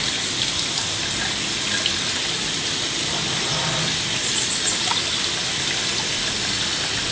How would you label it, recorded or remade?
recorded